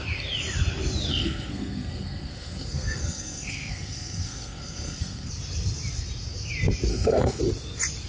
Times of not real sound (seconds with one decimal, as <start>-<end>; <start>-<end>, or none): 1.1-5.3; 6.9-7.4